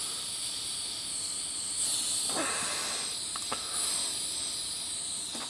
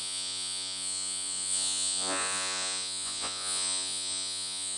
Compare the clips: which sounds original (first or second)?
first